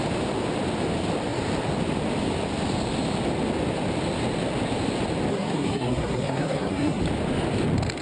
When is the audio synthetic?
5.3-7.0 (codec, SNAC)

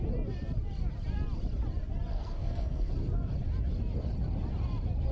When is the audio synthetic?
2.1-2.9 (codec, SNAC)